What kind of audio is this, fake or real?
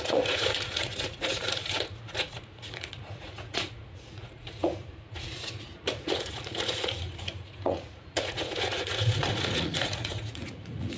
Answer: fake